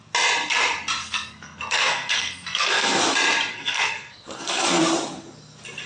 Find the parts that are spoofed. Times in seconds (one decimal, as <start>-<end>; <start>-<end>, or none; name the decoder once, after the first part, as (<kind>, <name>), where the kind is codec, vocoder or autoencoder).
1.0-3.0 (codec, SNAC); 3.5-4.8